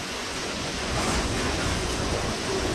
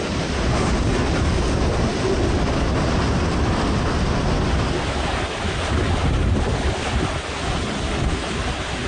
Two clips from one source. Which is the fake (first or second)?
first